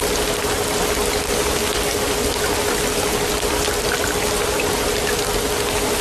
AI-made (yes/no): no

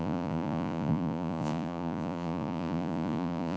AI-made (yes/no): yes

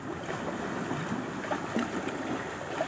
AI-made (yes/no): no